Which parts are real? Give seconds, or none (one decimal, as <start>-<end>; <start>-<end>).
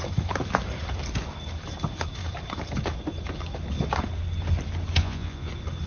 0.0-5.0; 5.5-5.9